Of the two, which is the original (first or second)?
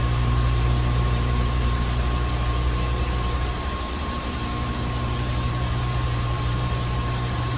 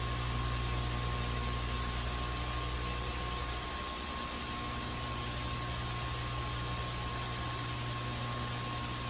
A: second